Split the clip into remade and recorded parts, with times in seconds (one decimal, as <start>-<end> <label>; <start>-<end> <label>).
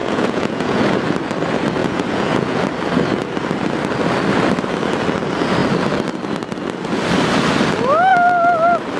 0.0-0.8 remade; 0.8-1.8 recorded; 1.8-2.6 remade; 2.6-9.0 recorded